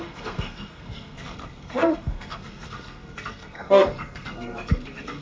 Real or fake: fake